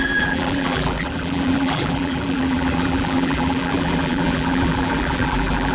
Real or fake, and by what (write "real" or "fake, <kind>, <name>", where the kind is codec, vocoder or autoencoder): fake, vocoder, BigVGAN v2